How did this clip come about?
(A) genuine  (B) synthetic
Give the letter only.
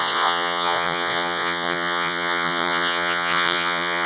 B